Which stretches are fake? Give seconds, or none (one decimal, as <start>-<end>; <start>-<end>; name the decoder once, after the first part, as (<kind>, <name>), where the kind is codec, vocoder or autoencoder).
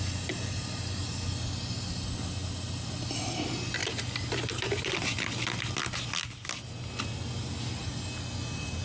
none